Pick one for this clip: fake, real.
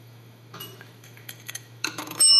fake